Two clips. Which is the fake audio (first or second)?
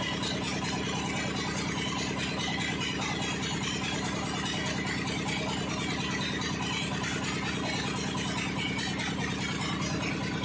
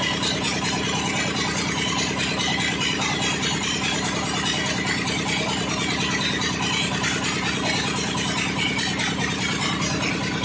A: second